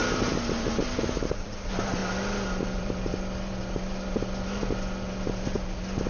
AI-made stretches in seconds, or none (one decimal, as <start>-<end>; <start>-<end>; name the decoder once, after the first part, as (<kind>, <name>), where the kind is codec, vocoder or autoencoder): 0.0-2.0 (vocoder, BigVGAN v2); 2.6-3.1